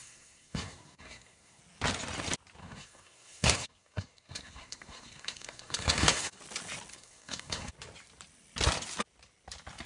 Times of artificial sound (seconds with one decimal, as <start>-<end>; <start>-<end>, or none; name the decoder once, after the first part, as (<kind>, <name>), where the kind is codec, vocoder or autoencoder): 0.0-1.6 (codec, SNAC); 2.6-6.4; 6.9-7.7